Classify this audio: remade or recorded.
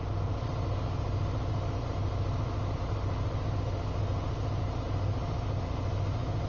recorded